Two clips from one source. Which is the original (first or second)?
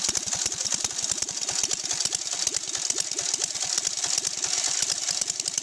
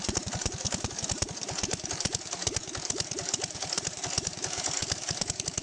first